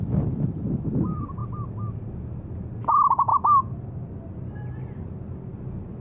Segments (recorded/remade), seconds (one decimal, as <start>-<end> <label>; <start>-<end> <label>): 0.0-6.0 recorded